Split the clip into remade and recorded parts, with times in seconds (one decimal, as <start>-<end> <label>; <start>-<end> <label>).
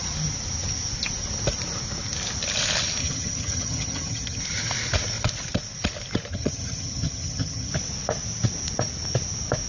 0.0-3.0 recorded; 3.0-4.4 remade; 4.4-6.3 recorded; 6.3-7.7 remade; 7.7-9.7 recorded